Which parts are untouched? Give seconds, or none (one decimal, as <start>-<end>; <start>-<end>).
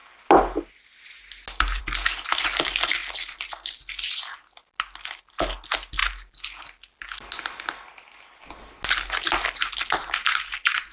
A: 0.0-10.9